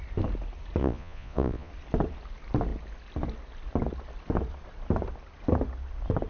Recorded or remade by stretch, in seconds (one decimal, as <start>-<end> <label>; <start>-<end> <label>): 0.0-0.8 recorded; 0.8-1.7 remade; 1.7-6.3 recorded